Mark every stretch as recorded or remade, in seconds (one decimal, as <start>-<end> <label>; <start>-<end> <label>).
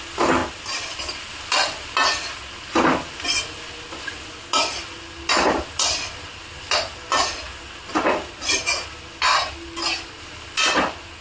0.0-11.2 recorded